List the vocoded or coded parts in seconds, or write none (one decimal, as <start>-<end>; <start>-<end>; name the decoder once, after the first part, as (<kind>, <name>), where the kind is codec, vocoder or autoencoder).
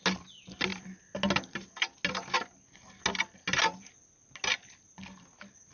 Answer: none